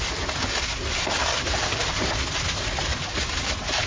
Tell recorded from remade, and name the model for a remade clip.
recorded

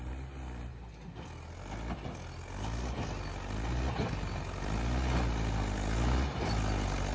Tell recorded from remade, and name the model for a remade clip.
recorded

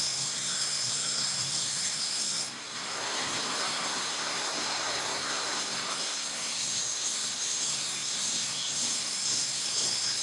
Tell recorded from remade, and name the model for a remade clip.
remade, codec, SNAC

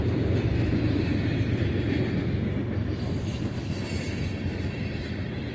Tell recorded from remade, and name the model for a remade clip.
recorded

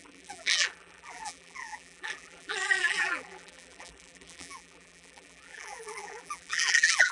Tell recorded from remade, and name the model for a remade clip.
remade, vocoder, BigVGAN v2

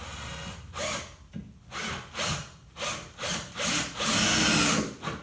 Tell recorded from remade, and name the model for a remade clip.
recorded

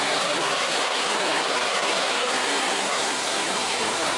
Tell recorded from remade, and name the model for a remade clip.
remade, codec, SNAC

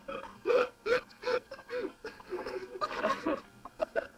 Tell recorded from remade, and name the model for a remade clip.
remade, codec, SNAC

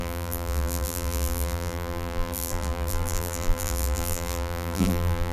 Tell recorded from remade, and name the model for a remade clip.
remade, vocoder, BigVGAN v2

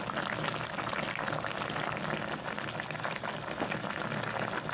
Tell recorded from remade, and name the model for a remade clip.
recorded